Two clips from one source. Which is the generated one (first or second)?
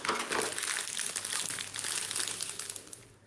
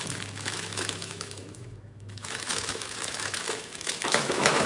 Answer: second